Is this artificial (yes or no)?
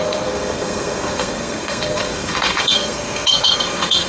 yes